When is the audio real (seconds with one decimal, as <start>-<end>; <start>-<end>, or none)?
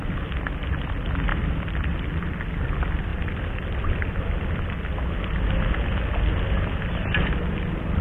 0.0-1.3; 2.0-3.1; 4.5-8.0